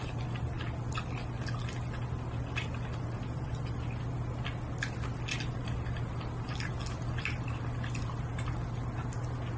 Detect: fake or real real